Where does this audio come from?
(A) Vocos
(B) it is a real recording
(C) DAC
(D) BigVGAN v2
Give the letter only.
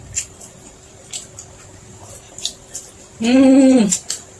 B